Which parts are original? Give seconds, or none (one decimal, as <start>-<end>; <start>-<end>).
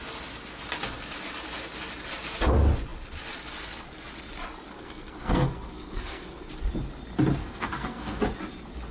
0.0-4.7; 6.5-7.4; 8.2-8.9